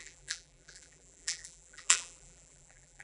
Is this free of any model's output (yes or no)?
no